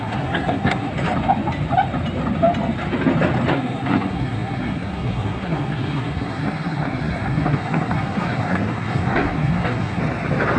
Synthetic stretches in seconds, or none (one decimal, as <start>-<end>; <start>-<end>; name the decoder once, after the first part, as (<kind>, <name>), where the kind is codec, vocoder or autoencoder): 0.0-0.9 (codec, SNAC); 3.5-10.0

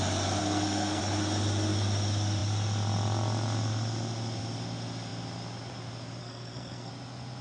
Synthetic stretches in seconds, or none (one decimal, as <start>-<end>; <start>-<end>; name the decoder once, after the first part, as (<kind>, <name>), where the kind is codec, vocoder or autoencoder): 0.4-1.0 (codec, SNAC); 6.2-6.9

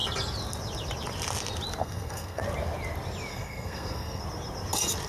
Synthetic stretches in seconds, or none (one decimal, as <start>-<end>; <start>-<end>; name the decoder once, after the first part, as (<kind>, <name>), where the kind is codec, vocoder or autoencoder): 1.8-2.4 (codec, SNAC); 3.3-4.2

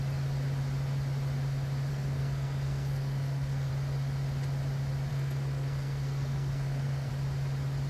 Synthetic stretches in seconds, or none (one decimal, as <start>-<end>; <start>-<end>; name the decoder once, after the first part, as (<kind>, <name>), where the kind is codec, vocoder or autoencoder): 1.9-3.7 (codec, SNAC); 5.1-7.1

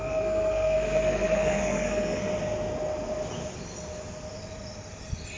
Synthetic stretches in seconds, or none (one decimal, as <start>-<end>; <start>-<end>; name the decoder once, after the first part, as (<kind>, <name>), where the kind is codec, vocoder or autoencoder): 0.0-2.3 (codec, SNAC)

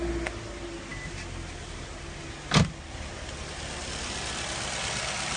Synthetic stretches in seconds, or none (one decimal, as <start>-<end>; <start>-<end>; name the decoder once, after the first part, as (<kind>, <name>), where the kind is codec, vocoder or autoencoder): none

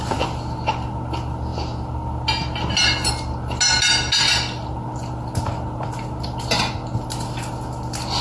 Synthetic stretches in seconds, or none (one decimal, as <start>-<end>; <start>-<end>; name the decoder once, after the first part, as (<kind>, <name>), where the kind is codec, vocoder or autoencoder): none